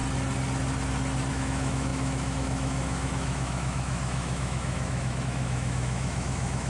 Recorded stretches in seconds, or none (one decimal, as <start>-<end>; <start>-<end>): 0.0-1.3